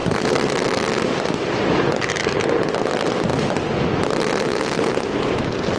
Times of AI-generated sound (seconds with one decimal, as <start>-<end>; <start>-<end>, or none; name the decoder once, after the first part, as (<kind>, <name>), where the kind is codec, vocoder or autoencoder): 0.0-0.5 (vocoder, BigVGAN v2)